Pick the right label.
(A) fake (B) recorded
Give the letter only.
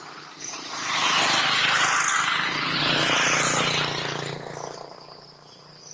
B